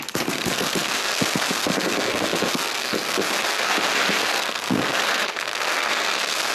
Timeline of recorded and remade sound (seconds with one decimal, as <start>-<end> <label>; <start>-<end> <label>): 0.0-6.5 remade

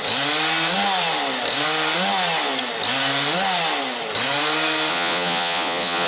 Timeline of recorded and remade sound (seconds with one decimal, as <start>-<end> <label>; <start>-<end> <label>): 0.0-4.9 recorded; 4.9-6.1 remade

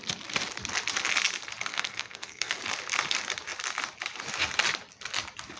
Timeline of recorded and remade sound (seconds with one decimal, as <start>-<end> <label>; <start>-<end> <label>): 0.0-1.7 recorded; 1.7-2.6 remade; 2.6-5.6 recorded

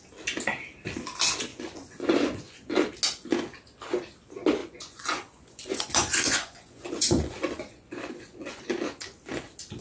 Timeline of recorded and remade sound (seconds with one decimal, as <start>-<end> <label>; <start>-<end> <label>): 0.0-1.5 recorded; 1.5-2.7 remade; 2.7-4.6 recorded; 4.6-8.6 remade; 8.6-9.8 recorded

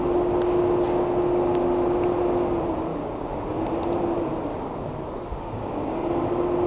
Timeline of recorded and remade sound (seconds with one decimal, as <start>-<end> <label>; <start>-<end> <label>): 0.0-2.9 recorded; 2.9-3.7 remade; 3.7-4.5 recorded; 4.5-6.3 remade; 6.3-6.7 recorded

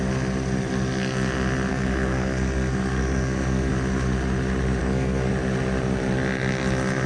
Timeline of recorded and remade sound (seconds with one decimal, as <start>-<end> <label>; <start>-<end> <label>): 0.0-1.7 recorded; 1.7-3.7 remade; 3.7-4.8 recorded; 4.8-5.3 remade; 5.3-7.1 recorded